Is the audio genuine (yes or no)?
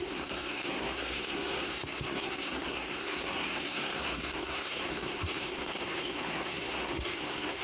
no